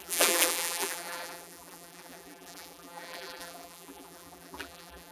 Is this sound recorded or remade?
remade